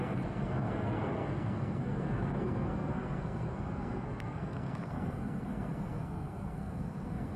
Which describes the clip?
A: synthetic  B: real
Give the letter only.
A